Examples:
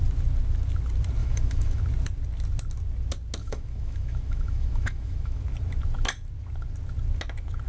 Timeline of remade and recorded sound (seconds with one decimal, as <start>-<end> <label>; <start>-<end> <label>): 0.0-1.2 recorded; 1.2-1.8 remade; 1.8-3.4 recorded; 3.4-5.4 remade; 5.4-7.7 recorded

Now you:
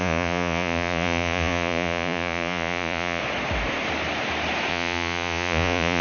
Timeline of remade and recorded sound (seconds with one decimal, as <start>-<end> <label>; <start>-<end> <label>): 0.0-3.2 remade; 3.2-4.7 recorded; 4.7-6.0 remade

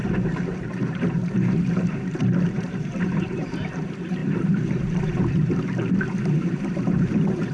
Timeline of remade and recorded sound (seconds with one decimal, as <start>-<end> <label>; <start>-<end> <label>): 0.0-7.5 remade

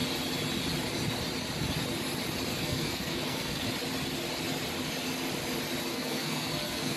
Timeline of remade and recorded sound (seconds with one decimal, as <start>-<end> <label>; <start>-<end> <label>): 0.0-2.5 recorded; 2.5-3.7 remade; 3.7-5.9 recorded; 5.9-7.0 remade